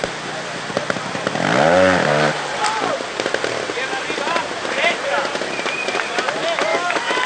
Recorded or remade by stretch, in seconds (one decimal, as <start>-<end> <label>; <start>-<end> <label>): 0.0-6.7 recorded; 6.7-7.3 remade